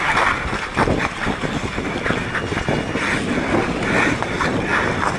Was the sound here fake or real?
real